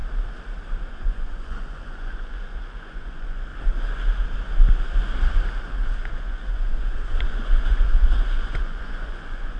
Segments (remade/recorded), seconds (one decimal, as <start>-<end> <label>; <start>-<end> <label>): 0.0-0.9 recorded; 0.9-3.5 remade; 3.5-6.2 recorded; 6.2-9.6 remade